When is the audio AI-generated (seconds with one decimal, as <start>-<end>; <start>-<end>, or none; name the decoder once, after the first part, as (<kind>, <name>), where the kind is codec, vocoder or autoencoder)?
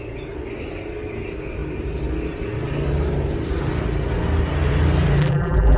5.2-5.8 (vocoder, BigVGAN v2)